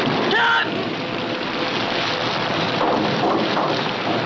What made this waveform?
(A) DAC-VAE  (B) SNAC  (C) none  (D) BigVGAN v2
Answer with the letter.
C